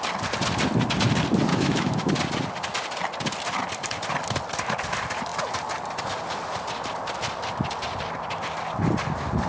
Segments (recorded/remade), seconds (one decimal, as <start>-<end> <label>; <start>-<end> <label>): 0.0-1.5 recorded; 1.5-2.1 remade; 2.1-9.5 recorded